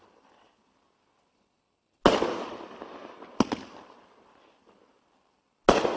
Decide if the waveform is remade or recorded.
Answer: recorded